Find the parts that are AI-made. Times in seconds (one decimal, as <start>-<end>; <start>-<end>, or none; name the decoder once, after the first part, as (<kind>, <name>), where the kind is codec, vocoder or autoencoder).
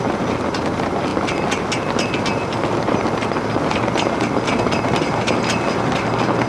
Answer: none